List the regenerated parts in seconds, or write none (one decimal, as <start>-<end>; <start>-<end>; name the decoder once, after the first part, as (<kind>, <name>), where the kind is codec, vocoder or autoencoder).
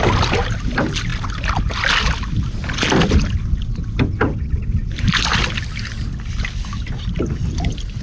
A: none